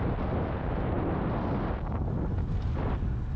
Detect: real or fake real